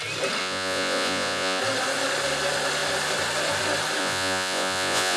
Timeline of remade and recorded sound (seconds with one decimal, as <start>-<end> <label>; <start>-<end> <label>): 0.0-0.4 recorded; 0.4-1.6 remade; 1.6-4.0 recorded; 4.0-5.2 remade